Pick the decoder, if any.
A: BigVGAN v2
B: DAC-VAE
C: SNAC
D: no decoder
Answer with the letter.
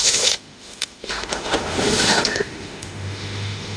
B